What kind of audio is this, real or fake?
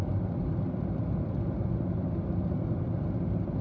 real